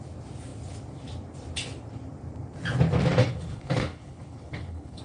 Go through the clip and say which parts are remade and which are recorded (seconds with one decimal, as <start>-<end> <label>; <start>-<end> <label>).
0.0-3.2 recorded; 3.2-5.0 remade